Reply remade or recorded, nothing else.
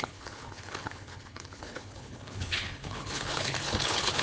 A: remade